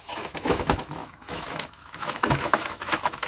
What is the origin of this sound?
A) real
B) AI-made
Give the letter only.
B